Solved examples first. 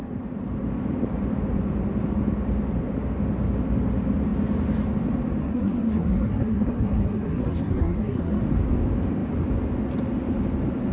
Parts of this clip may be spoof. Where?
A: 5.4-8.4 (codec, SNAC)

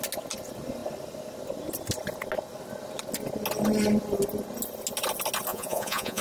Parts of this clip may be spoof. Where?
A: 5.5-6.2 (vocoder, Vocos)